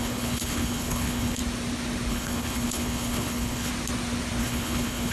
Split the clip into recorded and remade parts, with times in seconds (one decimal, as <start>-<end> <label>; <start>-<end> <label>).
0.0-1.4 remade; 1.4-2.1 recorded; 2.1-3.7 remade; 3.7-4.4 recorded; 4.4-5.1 remade